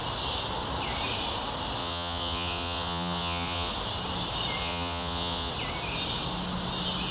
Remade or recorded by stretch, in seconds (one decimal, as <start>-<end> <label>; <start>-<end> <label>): 0.0-1.8 recorded; 1.8-3.7 remade; 3.7-4.6 recorded; 4.6-5.5 remade; 5.5-7.1 recorded